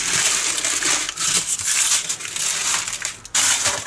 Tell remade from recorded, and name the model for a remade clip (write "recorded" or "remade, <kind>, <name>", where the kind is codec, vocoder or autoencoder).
recorded